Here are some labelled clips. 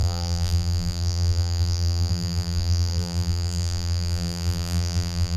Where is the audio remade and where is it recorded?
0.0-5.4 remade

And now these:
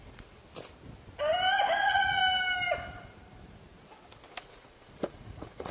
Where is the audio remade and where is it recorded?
0.0-0.4 remade; 0.4-1.8 recorded; 1.8-2.2 remade; 2.2-4.4 recorded; 4.4-5.7 remade

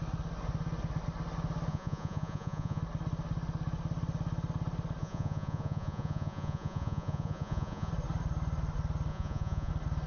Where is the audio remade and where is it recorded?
0.0-1.7 recorded; 1.7-2.8 remade; 2.8-5.0 recorded; 5.0-7.9 remade; 7.9-9.1 recorded; 9.1-9.7 remade; 9.7-10.1 recorded

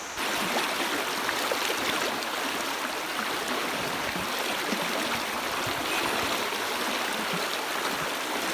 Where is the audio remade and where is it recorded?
0.0-8.5 recorded

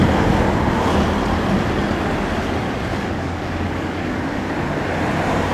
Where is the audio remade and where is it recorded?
0.0-2.9 recorded; 2.9-4.5 remade; 4.5-5.5 recorded

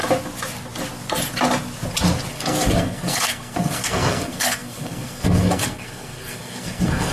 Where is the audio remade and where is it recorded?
0.0-2.3 recorded; 2.3-7.1 remade